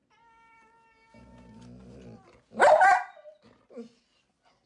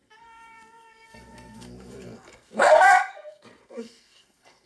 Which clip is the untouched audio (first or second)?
first